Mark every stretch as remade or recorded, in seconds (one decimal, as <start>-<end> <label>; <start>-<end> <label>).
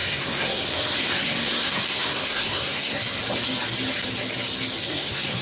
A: 0.0-3.2 remade; 3.2-4.8 recorded; 4.8-5.4 remade